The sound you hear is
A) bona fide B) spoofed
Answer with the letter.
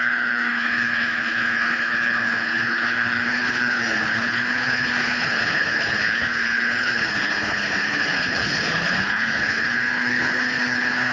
B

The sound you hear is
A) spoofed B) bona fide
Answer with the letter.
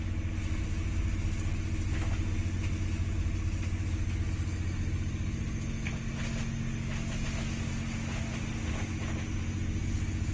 B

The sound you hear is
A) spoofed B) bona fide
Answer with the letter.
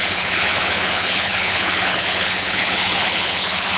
A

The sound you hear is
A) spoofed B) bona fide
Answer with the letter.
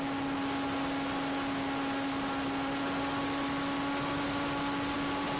B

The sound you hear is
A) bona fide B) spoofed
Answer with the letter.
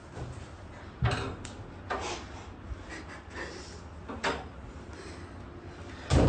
A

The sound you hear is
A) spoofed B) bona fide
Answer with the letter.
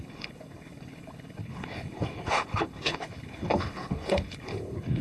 A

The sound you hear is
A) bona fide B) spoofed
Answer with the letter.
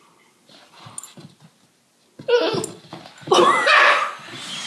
A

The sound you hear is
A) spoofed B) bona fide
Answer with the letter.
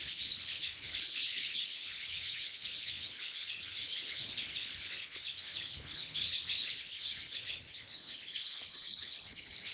A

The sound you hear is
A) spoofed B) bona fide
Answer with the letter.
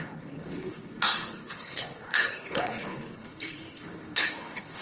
A